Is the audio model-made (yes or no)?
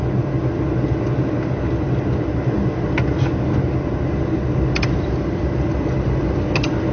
no